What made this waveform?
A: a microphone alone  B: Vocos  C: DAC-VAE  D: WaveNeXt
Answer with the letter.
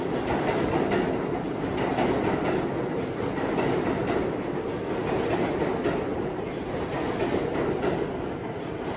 A